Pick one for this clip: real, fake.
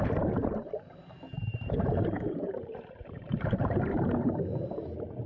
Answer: fake